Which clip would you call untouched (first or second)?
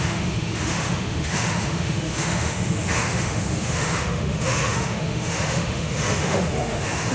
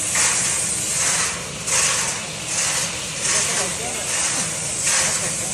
second